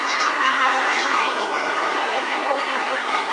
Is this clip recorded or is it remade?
remade